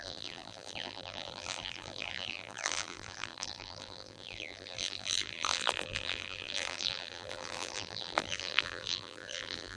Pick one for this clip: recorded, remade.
remade